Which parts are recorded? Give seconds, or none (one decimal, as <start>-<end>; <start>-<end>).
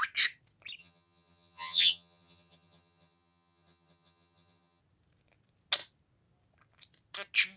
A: 0.0-0.8; 4.8-7.6